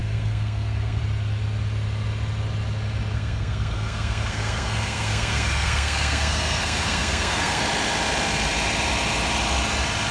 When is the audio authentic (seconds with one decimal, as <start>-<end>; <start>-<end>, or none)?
1.0-3.1; 7.6-10.1